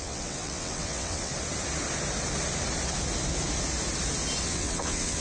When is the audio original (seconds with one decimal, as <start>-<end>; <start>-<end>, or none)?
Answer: 1.3-4.4